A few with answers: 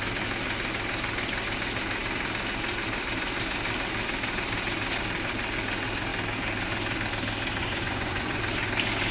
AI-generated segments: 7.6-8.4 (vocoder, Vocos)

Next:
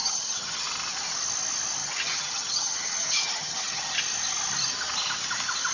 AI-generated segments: 0.0-0.6 (vocoder, HiFi-GAN); 1.8-3.8

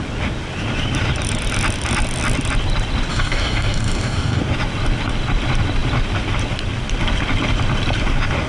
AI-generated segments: 3.1-4.4 (codec, DAC)

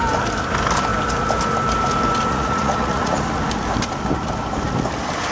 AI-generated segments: 2.3-3.2 (vocoder, Vocos)

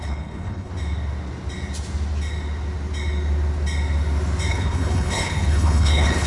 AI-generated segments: 0.0-0.7 (codec, HILCodec); 4.5-6.3

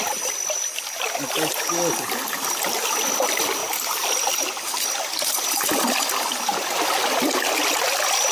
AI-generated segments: none

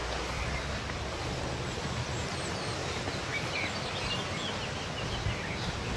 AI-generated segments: none